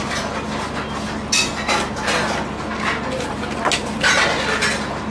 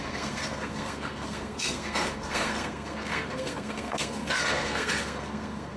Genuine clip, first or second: first